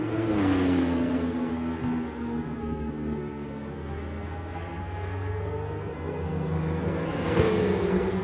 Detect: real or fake fake